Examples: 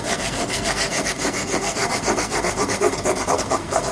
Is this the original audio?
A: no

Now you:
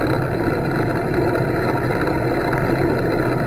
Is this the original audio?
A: yes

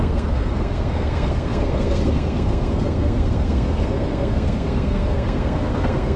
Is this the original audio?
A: no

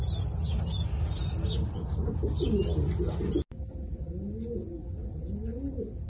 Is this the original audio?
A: yes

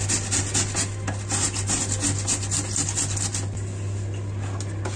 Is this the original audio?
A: yes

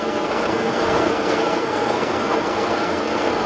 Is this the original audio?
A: no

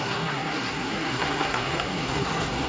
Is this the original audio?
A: no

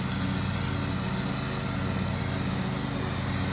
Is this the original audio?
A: yes